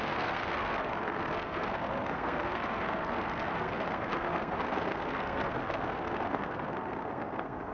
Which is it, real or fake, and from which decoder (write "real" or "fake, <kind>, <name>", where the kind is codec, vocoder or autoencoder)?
fake, codec, SNAC